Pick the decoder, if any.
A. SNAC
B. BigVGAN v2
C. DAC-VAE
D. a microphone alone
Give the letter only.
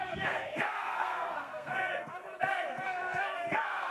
A